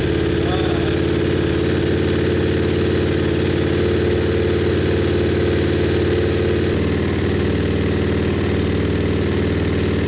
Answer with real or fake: real